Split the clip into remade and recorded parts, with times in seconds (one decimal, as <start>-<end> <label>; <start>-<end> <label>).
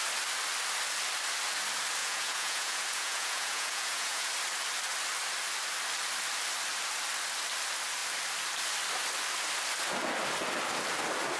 0.0-2.0 recorded; 2.0-4.3 remade; 4.3-11.4 recorded